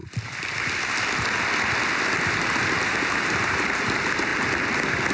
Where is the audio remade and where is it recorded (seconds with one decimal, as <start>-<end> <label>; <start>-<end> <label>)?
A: 0.0-3.1 recorded; 3.1-4.3 remade; 4.3-5.1 recorded